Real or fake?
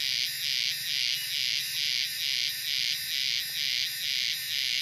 real